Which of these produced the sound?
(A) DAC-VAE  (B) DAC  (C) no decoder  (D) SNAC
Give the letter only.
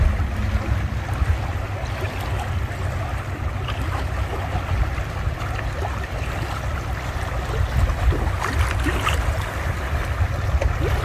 C